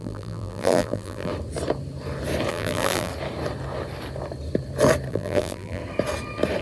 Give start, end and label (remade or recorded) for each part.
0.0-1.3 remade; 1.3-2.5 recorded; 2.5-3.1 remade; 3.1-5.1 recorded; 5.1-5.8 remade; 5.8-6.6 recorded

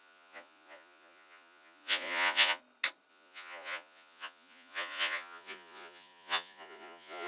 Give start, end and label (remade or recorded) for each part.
0.0-2.6 remade; 2.6-3.1 recorded; 3.1-7.3 remade